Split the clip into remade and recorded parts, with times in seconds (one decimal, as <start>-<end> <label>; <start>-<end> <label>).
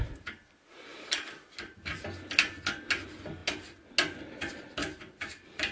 0.0-4.8 recorded; 4.8-5.7 remade